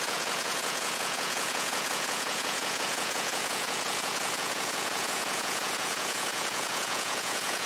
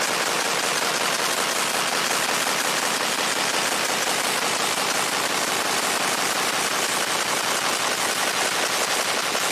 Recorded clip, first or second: second